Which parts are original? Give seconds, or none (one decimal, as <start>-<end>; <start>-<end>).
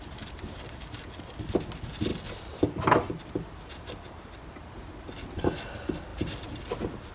0.0-7.1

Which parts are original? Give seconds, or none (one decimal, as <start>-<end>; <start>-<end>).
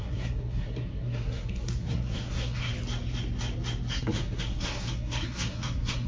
2.7-3.9